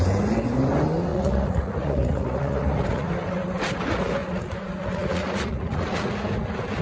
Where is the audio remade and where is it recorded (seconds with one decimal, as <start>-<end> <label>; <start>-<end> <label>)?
0.0-1.1 recorded; 1.1-3.1 remade; 3.1-4.2 recorded; 4.2-6.1 remade; 6.1-6.8 recorded